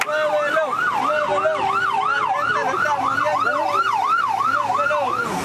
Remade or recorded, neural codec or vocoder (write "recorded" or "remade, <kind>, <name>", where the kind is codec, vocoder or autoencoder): recorded